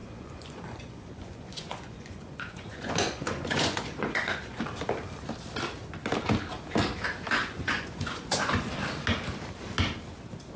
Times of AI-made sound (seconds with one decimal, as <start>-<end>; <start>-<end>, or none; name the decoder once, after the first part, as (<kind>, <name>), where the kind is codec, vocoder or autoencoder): 0.0-4.6 (vocoder, Vocos); 7.4-8.7